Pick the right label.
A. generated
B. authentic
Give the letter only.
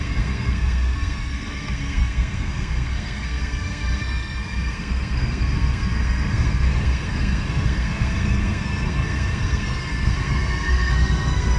A